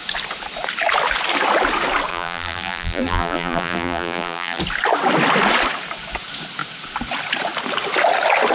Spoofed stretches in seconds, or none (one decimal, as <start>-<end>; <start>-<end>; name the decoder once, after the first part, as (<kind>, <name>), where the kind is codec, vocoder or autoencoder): 2.1-4.6 (vocoder, BigVGAN v2)